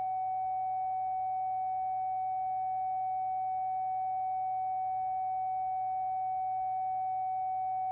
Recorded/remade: recorded